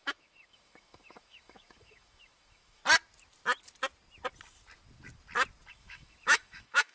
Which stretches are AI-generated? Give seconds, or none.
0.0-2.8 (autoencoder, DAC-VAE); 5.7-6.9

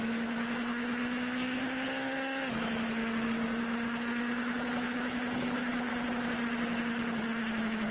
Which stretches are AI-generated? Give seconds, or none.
0.0-3.0 (autoencoder, DAC-VAE); 3.6-5.9

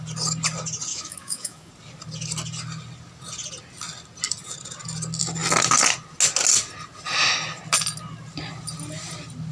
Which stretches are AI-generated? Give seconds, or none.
0.9-1.7 (autoencoder, DAC-VAE)